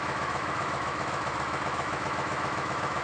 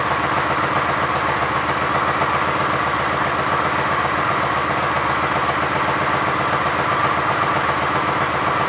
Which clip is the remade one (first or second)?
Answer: first